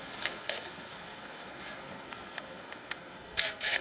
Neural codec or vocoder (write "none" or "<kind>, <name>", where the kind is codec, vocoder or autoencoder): codec, SNAC